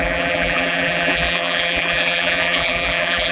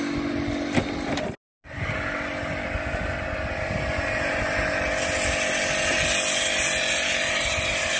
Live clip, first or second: second